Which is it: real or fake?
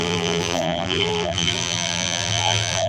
fake